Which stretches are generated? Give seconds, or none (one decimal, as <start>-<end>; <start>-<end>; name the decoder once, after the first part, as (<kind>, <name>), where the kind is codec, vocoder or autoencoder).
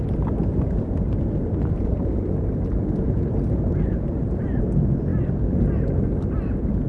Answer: 0.5-4.6 (vocoder, BigVGAN v2)